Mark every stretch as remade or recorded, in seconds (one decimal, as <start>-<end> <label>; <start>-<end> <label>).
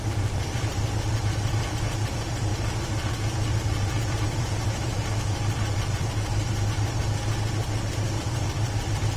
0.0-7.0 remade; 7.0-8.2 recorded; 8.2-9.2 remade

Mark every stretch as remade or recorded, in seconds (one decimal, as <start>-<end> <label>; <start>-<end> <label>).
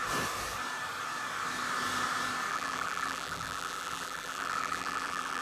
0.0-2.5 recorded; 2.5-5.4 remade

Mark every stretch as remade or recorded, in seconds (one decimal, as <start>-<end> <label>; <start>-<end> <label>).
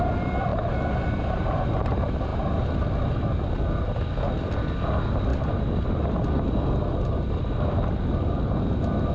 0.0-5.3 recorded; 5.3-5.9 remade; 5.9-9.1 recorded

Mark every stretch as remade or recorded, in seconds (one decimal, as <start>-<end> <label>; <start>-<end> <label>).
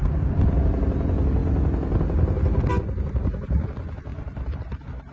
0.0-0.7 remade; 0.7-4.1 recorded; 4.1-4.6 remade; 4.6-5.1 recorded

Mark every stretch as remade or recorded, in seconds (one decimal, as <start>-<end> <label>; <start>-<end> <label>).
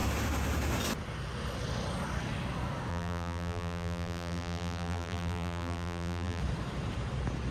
0.0-2.9 recorded; 2.9-6.4 remade; 6.4-7.5 recorded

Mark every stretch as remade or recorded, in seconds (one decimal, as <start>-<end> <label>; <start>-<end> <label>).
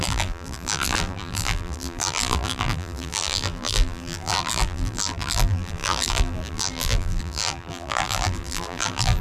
0.0-9.2 remade